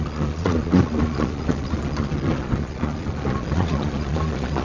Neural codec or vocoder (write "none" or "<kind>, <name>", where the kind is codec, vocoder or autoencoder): vocoder, Vocos